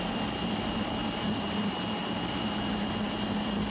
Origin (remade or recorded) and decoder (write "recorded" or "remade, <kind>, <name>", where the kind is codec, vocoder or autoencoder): recorded